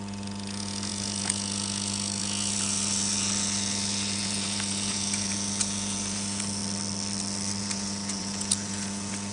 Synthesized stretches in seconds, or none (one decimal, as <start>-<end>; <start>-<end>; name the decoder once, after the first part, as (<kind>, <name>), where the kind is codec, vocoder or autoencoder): 0.0-6.6 (vocoder, Vocos); 7.6-9.3